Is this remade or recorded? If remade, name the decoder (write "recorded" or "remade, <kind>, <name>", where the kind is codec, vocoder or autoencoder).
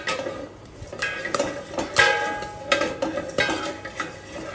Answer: recorded